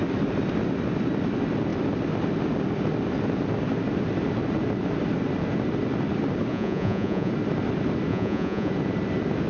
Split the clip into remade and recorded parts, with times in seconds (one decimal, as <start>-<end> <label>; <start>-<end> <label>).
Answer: 0.0-6.5 recorded; 6.5-7.3 remade; 7.3-8.1 recorded; 8.1-8.7 remade; 8.7-9.5 recorded